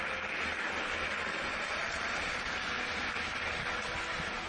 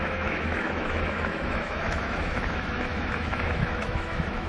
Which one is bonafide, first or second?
first